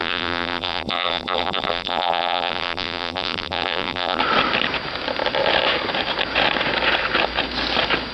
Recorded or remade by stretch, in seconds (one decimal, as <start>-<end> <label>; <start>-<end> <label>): 0.0-4.2 remade; 4.2-8.1 recorded